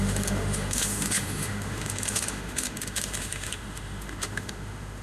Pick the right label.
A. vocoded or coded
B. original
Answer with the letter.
A